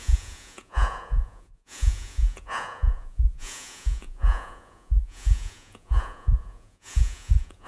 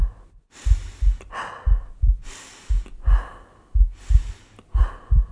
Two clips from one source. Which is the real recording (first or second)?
second